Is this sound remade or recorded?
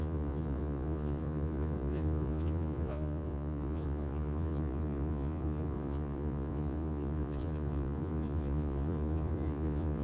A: remade